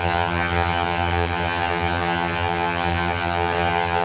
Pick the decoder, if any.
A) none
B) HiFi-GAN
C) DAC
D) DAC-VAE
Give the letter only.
B